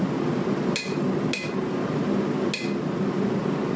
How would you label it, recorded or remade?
recorded